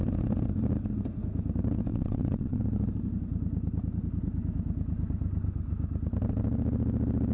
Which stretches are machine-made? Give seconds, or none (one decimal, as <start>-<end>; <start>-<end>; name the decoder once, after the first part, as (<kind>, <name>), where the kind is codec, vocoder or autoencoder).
1.9-2.6 (vocoder, WaveNeXt)